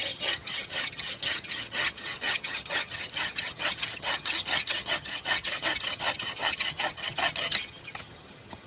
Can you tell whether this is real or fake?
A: fake